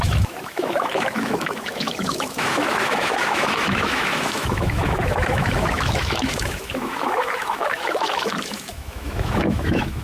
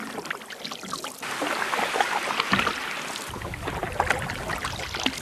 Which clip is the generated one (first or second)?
first